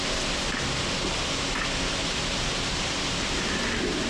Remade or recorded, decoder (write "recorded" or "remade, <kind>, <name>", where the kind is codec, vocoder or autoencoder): recorded